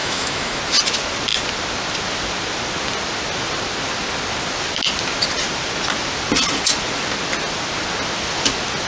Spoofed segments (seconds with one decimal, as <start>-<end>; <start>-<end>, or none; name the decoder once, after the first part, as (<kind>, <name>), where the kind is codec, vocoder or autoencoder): 0.0-0.6 (autoencoder, DAC-VAE)